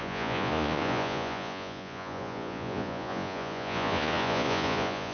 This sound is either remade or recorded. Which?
remade